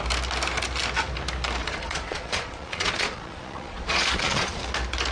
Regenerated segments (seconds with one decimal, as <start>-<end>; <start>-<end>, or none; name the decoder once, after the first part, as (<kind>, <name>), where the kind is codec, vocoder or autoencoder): 1.6-4.6 (vocoder, Vocos)